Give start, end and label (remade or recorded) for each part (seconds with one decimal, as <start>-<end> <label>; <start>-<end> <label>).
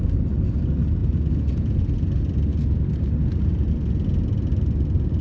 0.0-1.0 recorded; 1.0-1.8 remade; 1.8-5.2 recorded